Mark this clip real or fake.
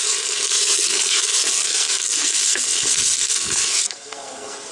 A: fake